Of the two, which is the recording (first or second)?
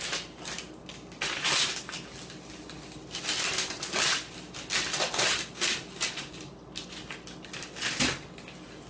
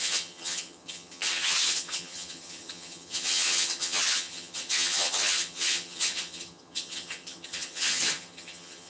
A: first